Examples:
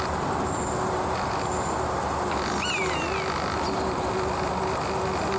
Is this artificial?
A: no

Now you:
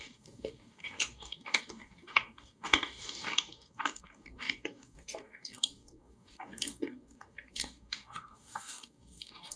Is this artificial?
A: yes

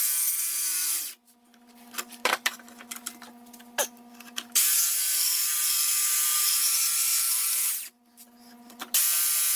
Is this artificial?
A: yes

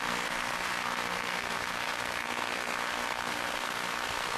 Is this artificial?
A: yes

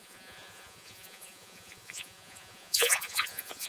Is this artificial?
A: yes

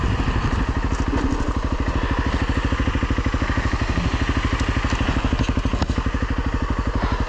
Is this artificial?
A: no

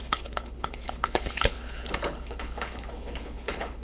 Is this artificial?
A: yes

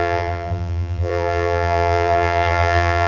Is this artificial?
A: yes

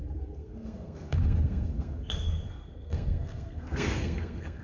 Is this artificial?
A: yes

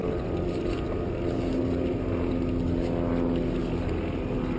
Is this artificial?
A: no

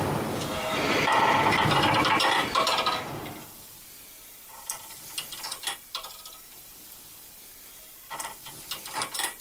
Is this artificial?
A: yes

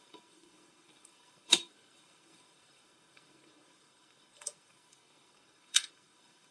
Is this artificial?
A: yes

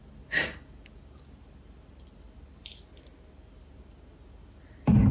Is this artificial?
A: no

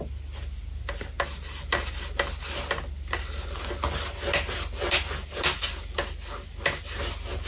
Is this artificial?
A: no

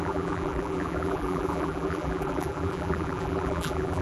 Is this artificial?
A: yes